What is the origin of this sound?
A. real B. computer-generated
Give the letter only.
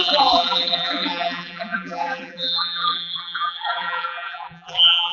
B